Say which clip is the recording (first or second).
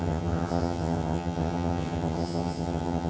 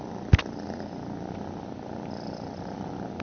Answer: second